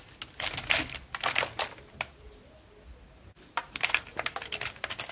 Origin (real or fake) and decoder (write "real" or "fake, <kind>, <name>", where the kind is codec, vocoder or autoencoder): real